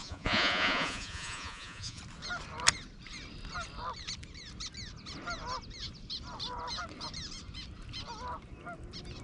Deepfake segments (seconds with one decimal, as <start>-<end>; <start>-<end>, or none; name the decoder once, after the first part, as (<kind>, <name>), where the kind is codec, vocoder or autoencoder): 0.0-2.0 (vocoder, Vocos)